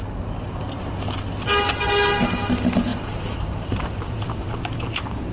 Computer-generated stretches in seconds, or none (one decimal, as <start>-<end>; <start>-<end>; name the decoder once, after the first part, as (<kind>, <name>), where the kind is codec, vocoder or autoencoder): 2.9-4.3 (vocoder, BigVGAN v2)